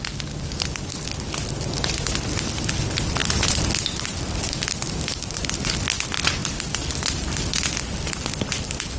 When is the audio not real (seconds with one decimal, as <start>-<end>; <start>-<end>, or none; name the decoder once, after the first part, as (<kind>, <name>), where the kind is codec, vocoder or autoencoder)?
none